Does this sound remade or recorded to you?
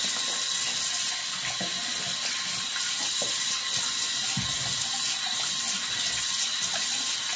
recorded